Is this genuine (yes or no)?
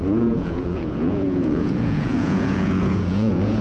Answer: no